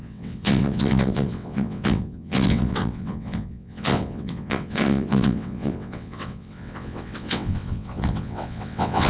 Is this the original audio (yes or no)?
no